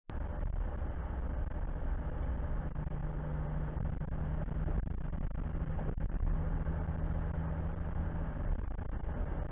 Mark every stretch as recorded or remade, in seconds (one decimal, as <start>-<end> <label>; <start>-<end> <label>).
0.0-9.5 recorded